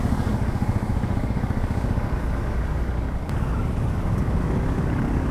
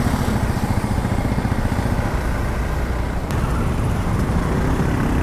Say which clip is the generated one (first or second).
first